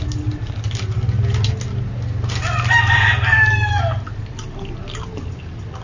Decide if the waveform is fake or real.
real